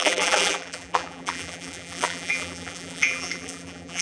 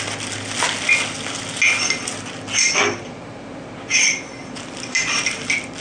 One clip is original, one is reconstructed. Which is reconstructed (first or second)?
first